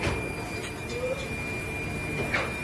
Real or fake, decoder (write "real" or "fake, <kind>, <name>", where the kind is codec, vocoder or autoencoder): real